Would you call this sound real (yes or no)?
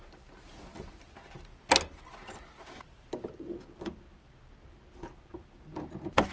yes